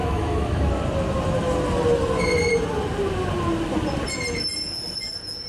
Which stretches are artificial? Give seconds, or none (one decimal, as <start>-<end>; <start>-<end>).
0.0-0.7